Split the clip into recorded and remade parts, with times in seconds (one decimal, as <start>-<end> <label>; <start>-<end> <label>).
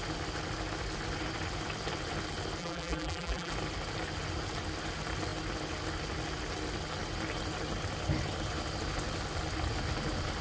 0.0-2.6 recorded; 2.6-3.5 remade; 3.5-10.4 recorded